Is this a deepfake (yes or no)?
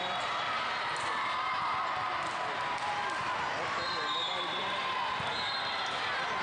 no